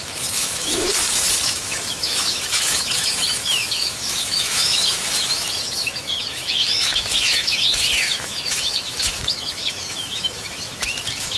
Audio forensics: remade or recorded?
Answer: remade